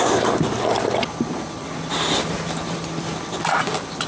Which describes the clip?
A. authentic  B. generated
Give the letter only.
A